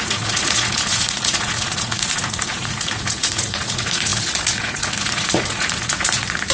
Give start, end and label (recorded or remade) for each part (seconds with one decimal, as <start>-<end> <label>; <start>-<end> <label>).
0.0-6.5 remade